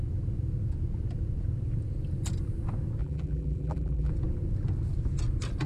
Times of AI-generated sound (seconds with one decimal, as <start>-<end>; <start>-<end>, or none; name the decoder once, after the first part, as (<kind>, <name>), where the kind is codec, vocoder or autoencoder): 3.0-4.1 (vocoder, BigVGAN v2)